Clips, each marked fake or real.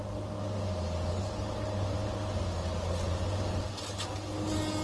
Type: real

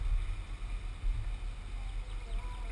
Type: real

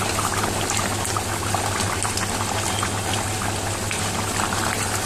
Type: real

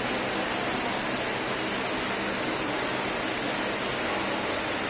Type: real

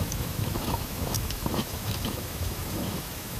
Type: fake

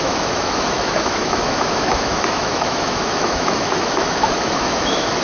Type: fake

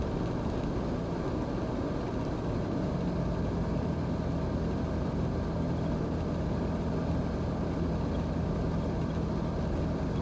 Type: real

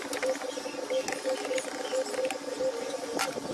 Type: real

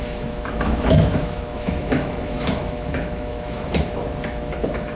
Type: fake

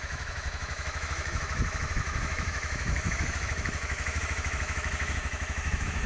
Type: fake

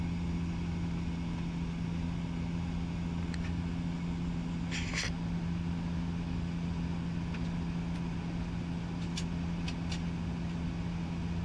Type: real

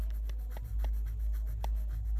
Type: real